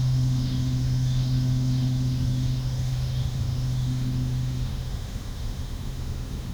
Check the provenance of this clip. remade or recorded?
remade